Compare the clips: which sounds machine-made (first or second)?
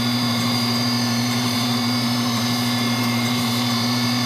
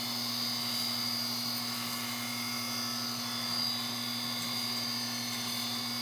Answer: first